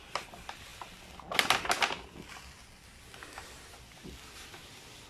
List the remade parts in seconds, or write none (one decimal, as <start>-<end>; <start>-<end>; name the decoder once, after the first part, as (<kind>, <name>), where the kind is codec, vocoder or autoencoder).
none